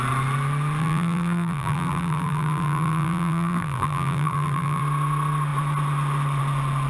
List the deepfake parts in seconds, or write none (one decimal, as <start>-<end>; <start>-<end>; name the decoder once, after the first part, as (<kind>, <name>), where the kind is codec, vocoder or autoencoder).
0.8-4.8 (vocoder, BigVGAN v2)